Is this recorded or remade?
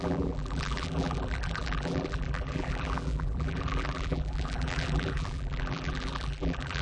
remade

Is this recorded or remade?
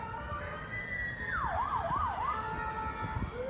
recorded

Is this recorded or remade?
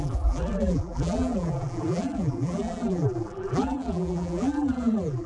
remade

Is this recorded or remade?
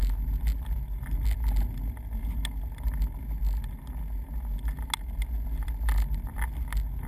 recorded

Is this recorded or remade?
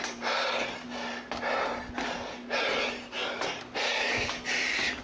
recorded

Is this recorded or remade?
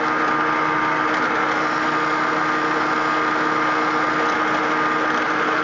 recorded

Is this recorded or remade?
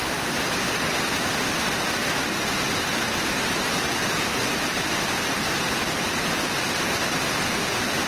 recorded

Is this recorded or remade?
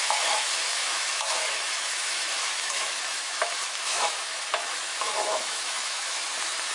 remade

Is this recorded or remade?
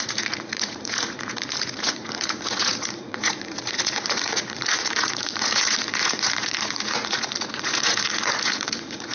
remade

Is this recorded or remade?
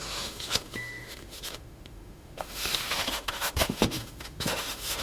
remade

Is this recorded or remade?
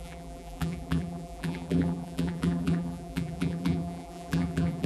remade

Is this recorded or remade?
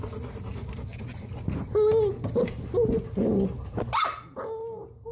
recorded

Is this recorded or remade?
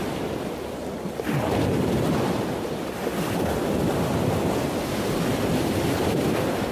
recorded